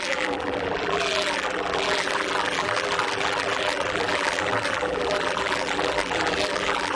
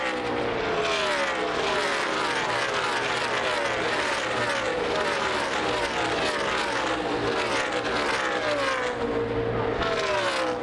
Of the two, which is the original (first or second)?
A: second